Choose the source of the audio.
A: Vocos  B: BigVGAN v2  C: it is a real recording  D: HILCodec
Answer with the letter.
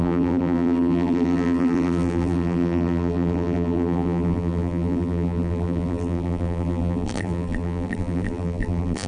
B